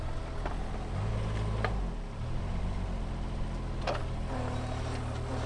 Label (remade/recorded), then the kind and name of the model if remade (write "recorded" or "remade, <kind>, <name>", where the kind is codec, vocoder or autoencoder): recorded